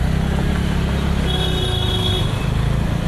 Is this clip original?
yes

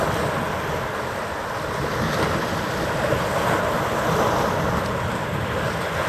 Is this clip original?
yes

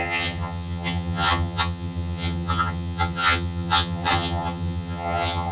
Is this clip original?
no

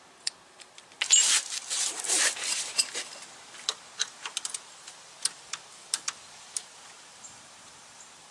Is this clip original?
no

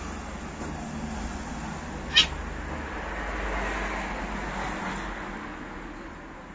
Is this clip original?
yes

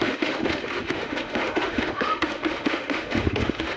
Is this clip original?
no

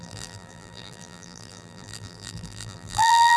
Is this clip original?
no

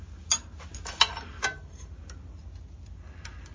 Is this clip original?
yes